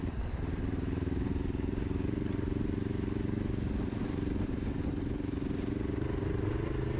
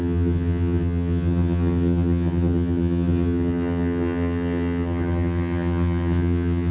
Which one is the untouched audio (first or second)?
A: first